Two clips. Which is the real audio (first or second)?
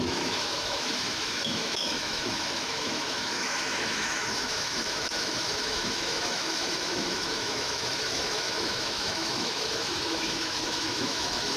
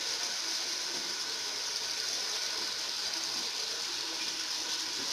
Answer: second